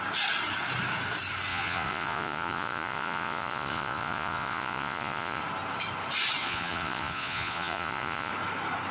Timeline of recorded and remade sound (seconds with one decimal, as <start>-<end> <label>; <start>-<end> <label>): 0.0-1.5 recorded; 1.5-5.4 remade; 5.4-6.4 recorded; 6.4-8.3 remade; 8.3-8.9 recorded